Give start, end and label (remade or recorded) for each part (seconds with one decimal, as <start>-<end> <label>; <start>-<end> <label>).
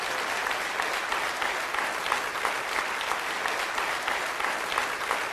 0.0-5.3 recorded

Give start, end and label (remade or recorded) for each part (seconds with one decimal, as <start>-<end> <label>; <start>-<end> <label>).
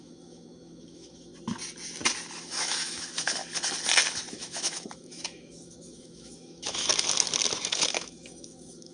0.0-1.3 remade; 1.3-2.3 recorded; 2.3-3.4 remade; 3.4-4.3 recorded; 4.3-6.9 remade; 6.9-7.7 recorded; 7.7-8.9 remade